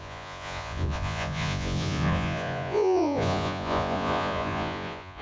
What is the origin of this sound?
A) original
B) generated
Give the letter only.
B